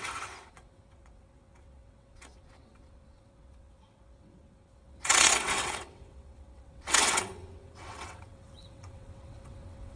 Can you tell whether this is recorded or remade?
remade